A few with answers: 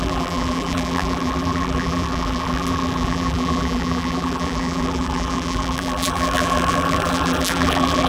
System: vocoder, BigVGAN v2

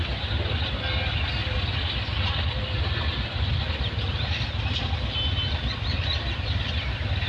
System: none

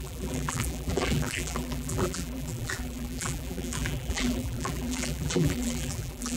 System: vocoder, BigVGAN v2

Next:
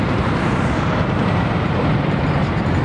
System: vocoder, BigVGAN v2